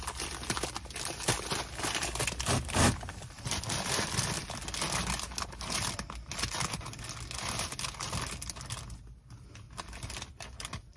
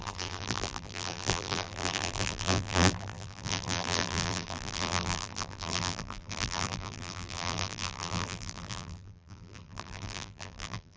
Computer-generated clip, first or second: second